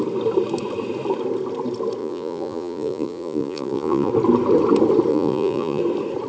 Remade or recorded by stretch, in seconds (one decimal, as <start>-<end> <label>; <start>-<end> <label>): 0.0-2.0 recorded; 2.0-4.1 remade; 4.1-5.1 recorded; 5.1-5.8 remade; 5.8-6.3 recorded